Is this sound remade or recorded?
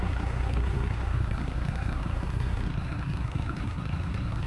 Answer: remade